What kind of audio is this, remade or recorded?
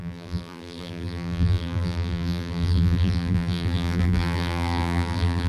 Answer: remade